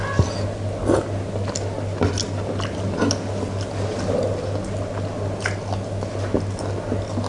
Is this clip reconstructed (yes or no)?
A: no